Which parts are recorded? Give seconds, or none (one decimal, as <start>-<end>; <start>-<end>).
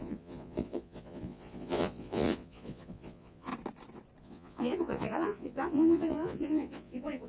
3.5-4.2